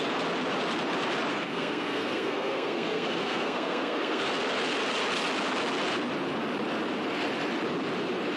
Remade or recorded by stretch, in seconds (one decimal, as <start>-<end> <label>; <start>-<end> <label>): 0.0-1.3 recorded; 1.3-4.2 remade; 4.2-8.4 recorded